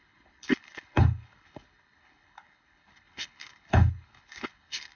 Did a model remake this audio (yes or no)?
yes